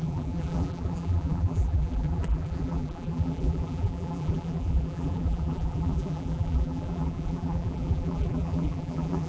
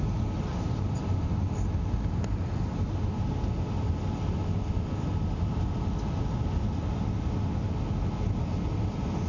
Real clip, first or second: second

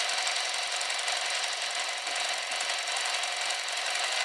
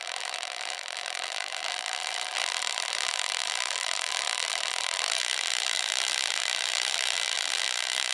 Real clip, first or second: first